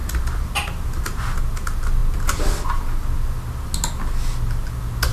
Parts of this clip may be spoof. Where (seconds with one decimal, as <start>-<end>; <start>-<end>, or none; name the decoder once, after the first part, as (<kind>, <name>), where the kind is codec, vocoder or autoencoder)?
none